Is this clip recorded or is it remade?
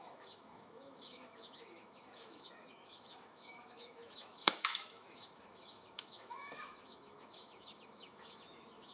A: remade